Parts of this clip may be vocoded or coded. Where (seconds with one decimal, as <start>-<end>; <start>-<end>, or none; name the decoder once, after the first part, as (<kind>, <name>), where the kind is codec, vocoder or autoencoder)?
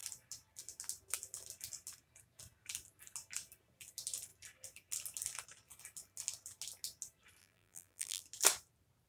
7.4-8.2 (vocoder, BigVGAN v2)